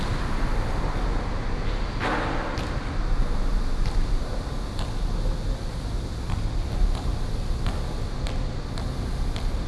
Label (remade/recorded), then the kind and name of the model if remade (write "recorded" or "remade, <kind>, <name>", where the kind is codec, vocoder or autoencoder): recorded